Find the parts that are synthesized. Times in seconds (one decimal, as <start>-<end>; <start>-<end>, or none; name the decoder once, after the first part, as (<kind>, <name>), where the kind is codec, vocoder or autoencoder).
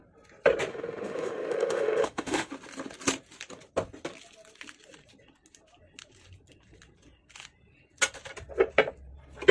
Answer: 0.7-2.5 (autoencoder, DAC-VAE)